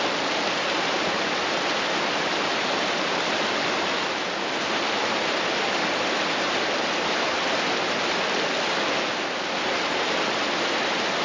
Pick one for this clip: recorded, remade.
recorded